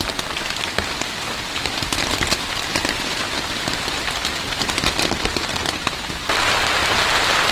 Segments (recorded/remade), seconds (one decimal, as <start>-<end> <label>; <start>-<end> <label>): 0.0-7.5 recorded